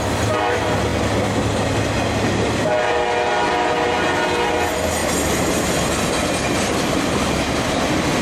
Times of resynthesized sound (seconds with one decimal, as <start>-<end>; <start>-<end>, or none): 5.0-7.0